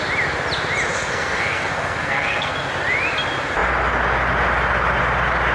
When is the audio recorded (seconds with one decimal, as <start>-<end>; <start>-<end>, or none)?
0.0-0.9; 2.7-5.5